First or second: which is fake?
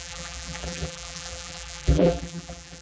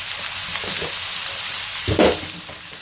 first